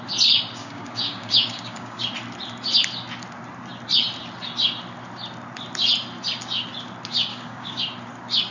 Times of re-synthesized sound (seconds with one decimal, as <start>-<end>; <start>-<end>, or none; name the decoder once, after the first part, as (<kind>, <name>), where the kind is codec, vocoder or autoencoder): 0.6-2.0 (codec, DAC); 7.3-7.8